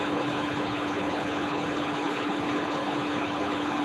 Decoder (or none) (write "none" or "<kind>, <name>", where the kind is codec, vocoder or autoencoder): codec, HILCodec